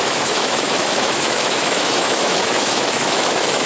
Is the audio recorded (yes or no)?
no